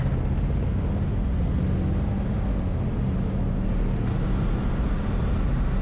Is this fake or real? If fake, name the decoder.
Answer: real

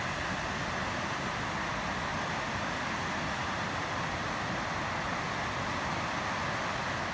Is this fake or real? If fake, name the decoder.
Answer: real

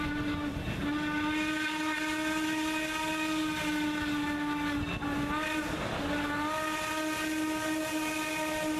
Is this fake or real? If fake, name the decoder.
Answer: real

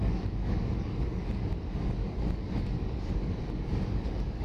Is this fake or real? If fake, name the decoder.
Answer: fake, codec, DAC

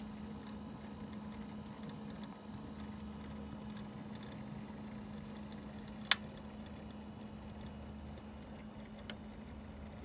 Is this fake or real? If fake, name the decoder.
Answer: real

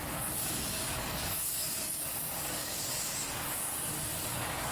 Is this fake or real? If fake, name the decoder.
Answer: fake, codec, DAC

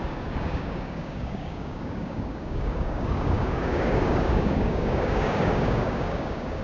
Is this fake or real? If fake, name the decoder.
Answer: fake, codec, DAC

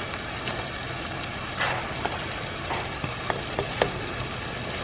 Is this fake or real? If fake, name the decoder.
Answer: real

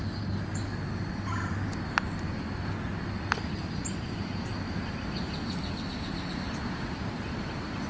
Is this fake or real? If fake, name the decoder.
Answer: real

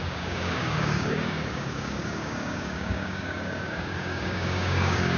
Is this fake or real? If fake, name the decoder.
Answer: fake, codec, DAC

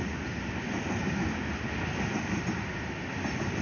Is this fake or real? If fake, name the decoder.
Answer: real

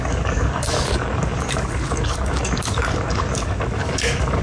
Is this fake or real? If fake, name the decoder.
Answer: fake, codec, DAC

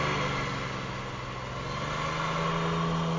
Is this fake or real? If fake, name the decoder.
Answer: real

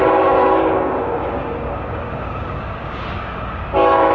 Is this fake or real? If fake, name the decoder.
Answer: fake, codec, DAC